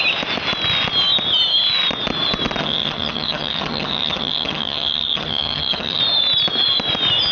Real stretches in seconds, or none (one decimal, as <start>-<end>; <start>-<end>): 0.0-2.6; 6.0-7.3